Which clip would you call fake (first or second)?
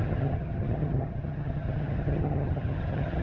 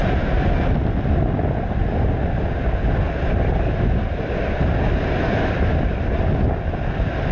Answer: first